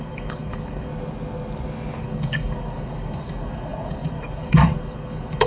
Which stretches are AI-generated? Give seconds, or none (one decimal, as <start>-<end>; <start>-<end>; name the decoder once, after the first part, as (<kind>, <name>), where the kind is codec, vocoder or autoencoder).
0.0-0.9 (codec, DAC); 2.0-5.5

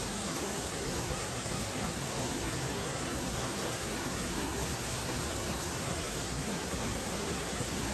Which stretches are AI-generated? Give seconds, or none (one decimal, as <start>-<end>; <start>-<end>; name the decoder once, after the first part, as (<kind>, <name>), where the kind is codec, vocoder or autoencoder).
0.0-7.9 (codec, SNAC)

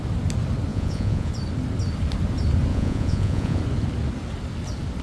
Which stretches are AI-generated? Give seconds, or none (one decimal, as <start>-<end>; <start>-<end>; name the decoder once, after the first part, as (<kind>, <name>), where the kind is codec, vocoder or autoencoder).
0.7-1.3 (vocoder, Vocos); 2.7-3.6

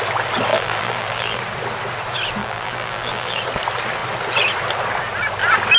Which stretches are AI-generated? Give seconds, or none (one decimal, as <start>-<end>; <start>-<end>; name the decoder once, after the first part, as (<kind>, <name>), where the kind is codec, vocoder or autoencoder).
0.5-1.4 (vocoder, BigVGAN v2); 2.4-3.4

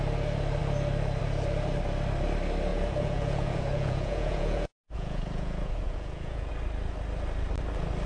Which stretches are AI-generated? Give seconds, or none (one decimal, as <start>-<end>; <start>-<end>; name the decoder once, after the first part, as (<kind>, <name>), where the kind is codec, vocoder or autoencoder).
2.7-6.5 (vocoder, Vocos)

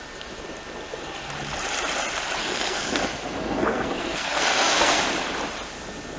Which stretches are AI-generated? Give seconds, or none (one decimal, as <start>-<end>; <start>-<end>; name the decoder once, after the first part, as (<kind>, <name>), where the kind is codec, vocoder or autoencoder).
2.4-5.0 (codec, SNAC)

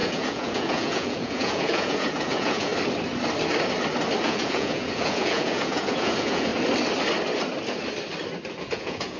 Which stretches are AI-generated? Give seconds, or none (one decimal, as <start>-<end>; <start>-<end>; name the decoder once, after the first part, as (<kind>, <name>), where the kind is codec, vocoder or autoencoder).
0.0-2.7 (vocoder, Vocos); 4.2-6.5; 8.6-9.2

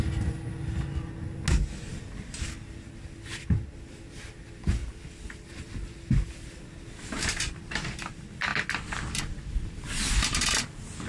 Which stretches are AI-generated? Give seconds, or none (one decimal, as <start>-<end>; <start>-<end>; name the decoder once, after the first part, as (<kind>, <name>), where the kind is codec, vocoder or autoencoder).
none